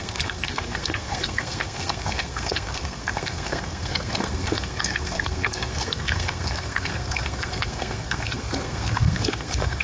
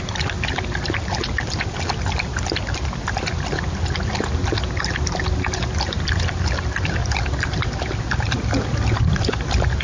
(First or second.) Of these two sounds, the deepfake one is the first